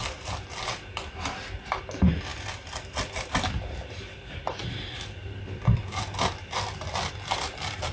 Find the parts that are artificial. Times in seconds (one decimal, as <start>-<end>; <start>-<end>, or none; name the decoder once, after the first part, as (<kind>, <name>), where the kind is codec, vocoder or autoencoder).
none

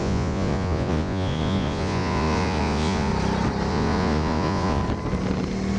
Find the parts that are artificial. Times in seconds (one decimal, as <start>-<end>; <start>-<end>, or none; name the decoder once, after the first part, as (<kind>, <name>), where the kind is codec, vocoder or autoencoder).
0.0-3.1 (vocoder, Vocos); 3.7-4.8

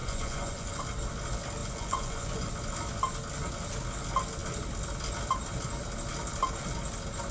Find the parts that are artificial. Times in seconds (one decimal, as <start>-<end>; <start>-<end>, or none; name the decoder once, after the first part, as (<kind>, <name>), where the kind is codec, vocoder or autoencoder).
0.0-0.8 (vocoder, Vocos); 1.6-2.5

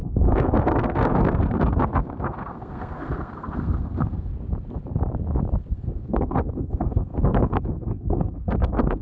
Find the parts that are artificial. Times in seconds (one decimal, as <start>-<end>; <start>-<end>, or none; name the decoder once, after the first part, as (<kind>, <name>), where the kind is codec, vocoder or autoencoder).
0.0-4.3 (codec, SNAC); 5.7-9.0